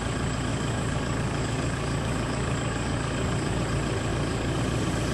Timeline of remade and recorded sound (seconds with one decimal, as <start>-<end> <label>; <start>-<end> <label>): 0.0-0.5 recorded; 0.5-3.6 remade; 3.6-4.1 recorded; 4.1-4.6 remade; 4.6-5.1 recorded